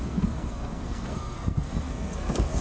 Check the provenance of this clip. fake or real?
fake